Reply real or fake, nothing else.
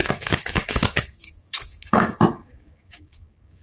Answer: fake